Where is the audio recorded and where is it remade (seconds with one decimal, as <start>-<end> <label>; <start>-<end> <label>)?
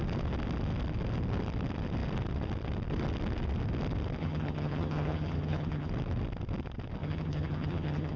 0.0-4.2 recorded; 4.2-5.9 remade; 5.9-7.0 recorded; 7.0-8.2 remade